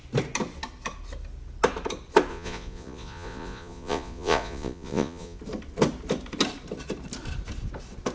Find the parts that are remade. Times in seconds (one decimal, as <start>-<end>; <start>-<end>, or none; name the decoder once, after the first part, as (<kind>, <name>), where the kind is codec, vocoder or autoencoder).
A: 2.3-5.4 (vocoder, Vocos)